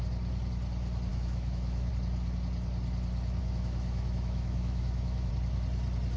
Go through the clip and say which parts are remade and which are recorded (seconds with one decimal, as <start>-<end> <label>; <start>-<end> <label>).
0.0-1.1 recorded; 1.1-1.9 remade; 1.9-3.4 recorded; 3.4-5.3 remade; 5.3-6.2 recorded